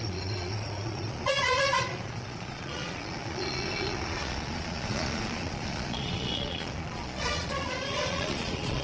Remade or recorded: remade